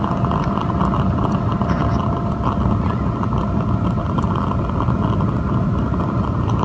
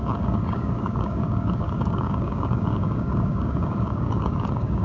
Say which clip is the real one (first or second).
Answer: first